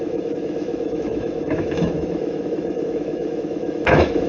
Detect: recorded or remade remade